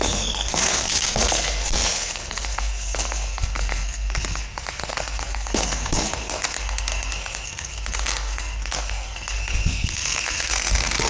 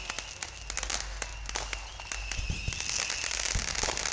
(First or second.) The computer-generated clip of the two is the first